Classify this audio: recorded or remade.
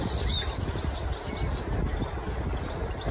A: recorded